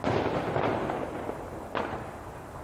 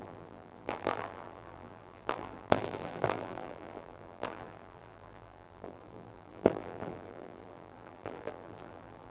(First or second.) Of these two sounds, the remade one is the second